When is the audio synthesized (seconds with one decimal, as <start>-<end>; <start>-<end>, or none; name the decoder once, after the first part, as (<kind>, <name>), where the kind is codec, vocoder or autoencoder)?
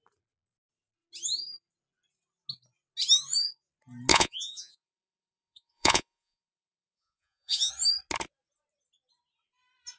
4.1-7.7 (vocoder, Vocos)